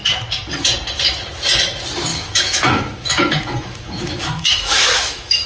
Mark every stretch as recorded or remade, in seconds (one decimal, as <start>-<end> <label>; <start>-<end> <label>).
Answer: 0.0-2.1 recorded; 2.1-5.5 remade